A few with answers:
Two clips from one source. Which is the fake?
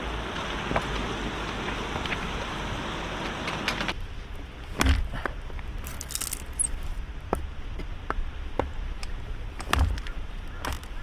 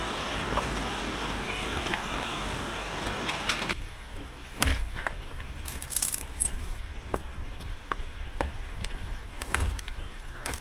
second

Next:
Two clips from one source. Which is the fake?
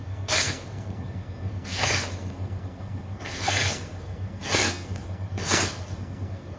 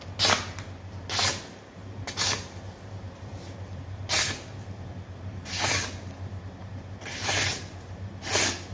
first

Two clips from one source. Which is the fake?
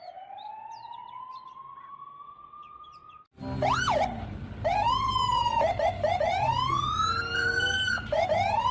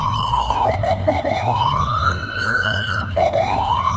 second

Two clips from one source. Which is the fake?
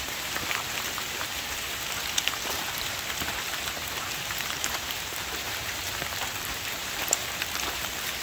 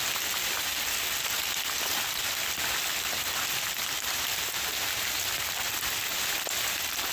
first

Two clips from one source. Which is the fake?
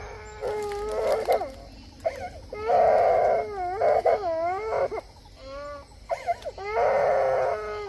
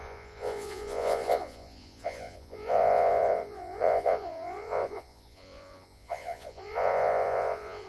second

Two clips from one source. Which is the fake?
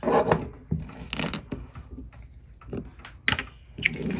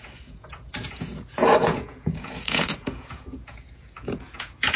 second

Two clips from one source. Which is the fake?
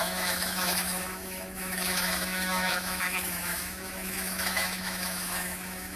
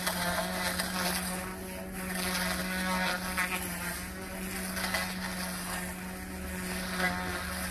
first